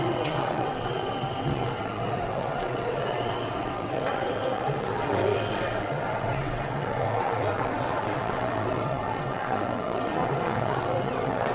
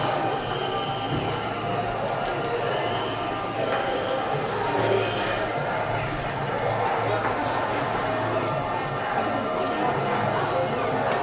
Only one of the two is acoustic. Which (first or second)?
second